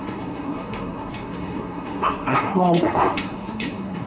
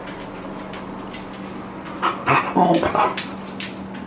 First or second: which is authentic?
second